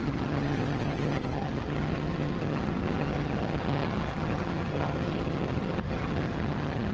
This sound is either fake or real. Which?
fake